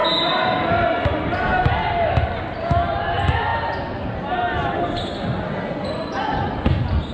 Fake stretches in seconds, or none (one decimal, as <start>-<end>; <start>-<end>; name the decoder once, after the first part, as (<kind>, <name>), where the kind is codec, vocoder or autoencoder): none